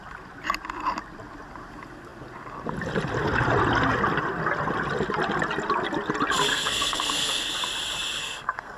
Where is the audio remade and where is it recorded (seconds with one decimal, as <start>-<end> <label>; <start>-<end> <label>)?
0.0-6.5 recorded; 6.5-7.5 remade; 7.5-8.2 recorded; 8.2-8.8 remade